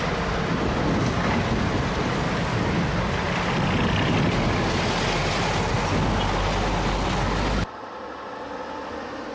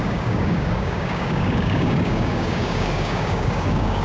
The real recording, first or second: first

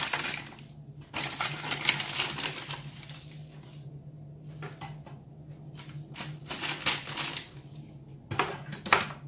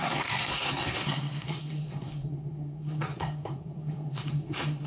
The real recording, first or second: first